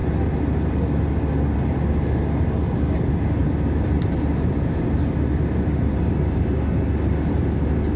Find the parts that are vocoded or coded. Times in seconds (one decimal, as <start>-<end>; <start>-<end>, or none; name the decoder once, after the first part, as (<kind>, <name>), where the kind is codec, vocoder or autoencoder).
3.4-5.1 (vocoder, BigVGAN v2)